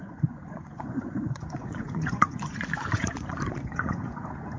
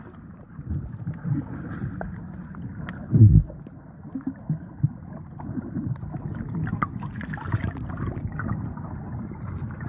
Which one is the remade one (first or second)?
first